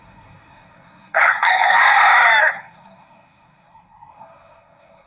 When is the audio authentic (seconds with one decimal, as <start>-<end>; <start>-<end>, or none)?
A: 1.8-2.4